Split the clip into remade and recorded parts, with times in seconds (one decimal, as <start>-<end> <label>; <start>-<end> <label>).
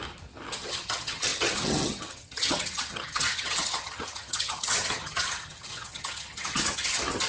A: 0.0-0.5 recorded; 0.5-7.3 remade